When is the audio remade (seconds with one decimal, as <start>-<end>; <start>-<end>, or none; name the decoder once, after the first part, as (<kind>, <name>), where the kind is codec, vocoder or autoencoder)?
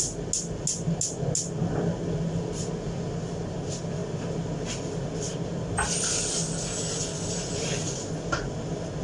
none